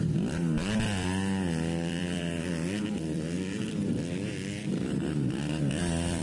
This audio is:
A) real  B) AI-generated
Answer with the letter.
B